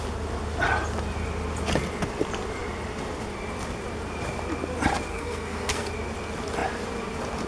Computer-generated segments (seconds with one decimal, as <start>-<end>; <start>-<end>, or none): 5.1-5.9